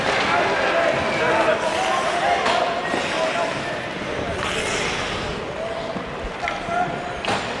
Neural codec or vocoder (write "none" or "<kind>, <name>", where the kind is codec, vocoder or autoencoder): none